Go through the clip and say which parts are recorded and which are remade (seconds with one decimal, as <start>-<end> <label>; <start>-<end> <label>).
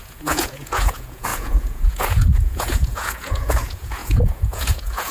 0.0-5.1 remade